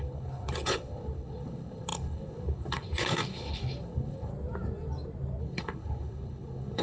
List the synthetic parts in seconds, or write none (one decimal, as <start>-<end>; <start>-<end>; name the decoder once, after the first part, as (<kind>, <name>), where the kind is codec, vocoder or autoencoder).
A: 0.0-4.3 (codec, HILCodec); 5.4-6.8